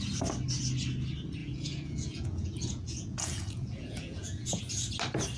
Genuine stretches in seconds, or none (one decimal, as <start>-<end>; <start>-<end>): 0.0-1.4; 4.6-5.4

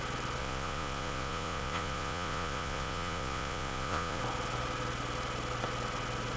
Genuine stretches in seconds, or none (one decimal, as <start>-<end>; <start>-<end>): 0.0-0.4; 4.2-6.4